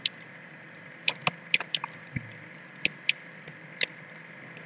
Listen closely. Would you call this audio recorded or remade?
remade